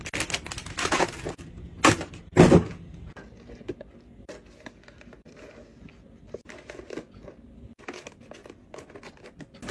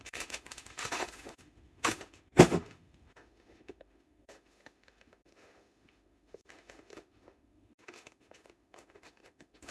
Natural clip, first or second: first